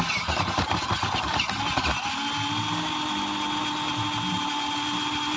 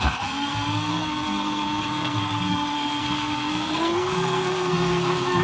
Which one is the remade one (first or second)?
second